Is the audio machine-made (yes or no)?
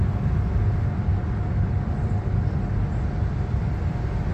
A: no